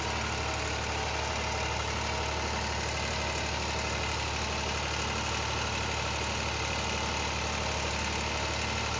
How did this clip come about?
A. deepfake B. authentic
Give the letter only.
B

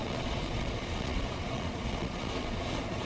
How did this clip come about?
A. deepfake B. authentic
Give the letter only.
A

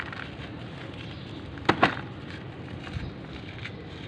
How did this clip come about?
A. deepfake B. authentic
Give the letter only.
B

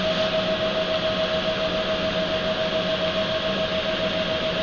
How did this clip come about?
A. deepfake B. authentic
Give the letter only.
B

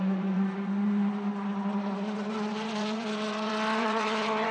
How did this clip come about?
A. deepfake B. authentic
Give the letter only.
A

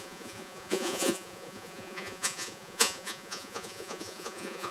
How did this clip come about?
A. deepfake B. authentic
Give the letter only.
A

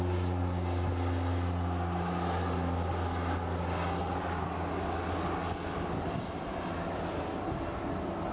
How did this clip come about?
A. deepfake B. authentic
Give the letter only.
B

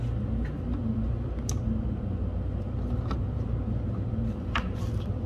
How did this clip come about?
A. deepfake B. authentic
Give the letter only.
B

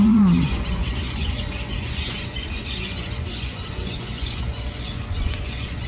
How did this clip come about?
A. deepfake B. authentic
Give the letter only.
A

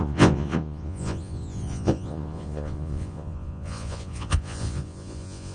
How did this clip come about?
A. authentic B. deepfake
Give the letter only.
B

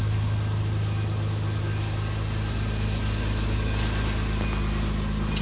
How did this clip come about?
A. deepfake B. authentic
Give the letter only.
B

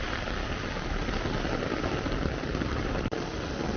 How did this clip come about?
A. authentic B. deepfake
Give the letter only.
A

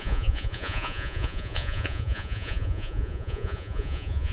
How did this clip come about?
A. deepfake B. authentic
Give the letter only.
A